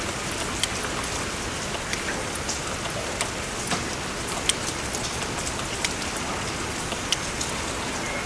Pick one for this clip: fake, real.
real